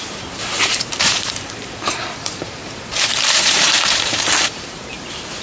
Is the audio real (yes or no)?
no